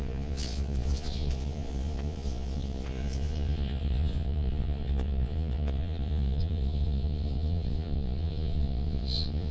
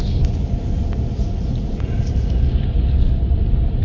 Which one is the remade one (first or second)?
first